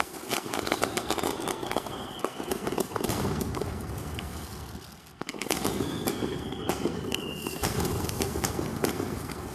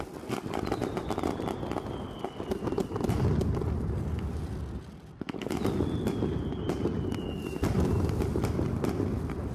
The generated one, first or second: first